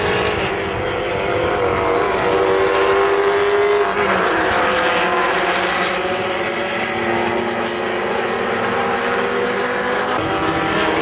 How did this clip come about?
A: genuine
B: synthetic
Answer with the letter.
A